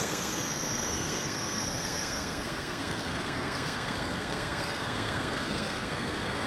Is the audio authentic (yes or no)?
no